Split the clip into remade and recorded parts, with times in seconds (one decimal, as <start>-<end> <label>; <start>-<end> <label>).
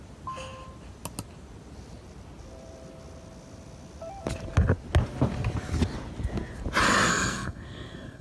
0.0-7.1 recorded; 7.1-8.2 remade